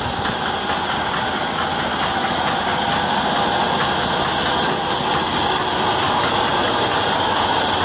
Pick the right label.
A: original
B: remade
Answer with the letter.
A